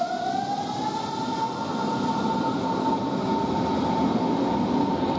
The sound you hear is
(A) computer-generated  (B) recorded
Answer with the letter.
B